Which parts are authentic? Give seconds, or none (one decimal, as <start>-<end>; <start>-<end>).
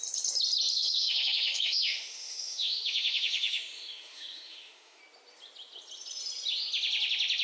0.0-0.7; 5.0-7.4